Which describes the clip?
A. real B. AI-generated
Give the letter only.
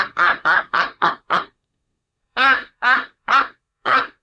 B